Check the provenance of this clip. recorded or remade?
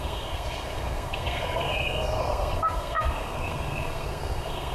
remade